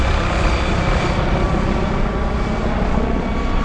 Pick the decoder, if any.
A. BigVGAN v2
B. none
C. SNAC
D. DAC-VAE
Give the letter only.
B